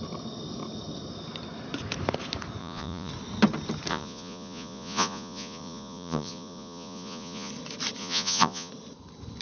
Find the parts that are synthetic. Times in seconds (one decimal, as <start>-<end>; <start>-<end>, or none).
2.6-3.1; 3.9-7.5; 8.0-8.7